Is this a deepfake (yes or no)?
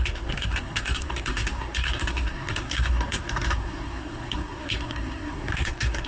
yes